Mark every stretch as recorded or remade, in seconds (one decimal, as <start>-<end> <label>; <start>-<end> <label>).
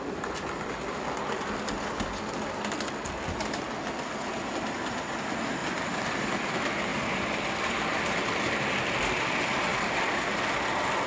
0.0-5.6 recorded; 5.6-6.1 remade; 6.1-6.9 recorded; 6.9-7.6 remade; 7.6-9.7 recorded; 9.7-11.1 remade